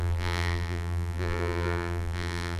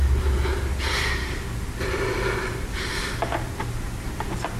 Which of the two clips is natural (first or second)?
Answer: second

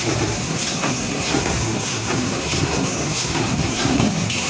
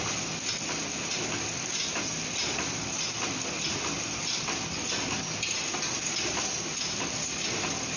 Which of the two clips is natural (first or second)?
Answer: second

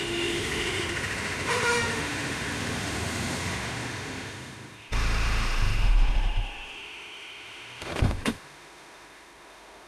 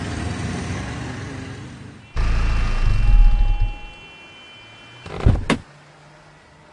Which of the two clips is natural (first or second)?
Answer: second